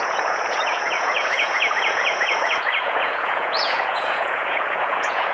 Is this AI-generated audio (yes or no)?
yes